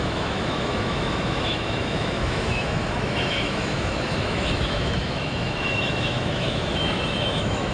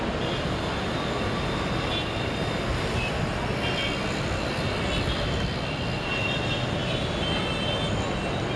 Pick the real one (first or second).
second